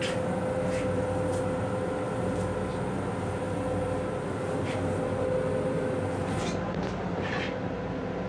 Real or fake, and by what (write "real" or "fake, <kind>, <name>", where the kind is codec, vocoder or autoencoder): real